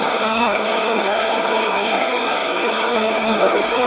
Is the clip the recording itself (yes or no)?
no